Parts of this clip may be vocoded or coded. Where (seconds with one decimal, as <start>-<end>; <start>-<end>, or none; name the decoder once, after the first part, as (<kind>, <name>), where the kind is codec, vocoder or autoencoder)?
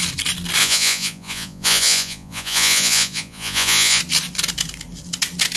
0.6-4.0 (vocoder, Vocos)